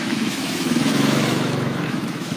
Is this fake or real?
fake